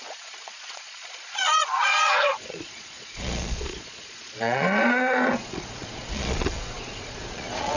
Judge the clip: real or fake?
fake